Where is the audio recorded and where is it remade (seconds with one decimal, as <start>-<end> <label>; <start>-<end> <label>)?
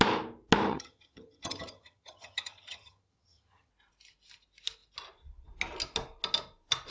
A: 0.0-0.7 recorded; 0.7-3.7 remade; 3.7-6.9 recorded